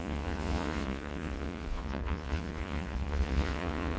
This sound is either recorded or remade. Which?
remade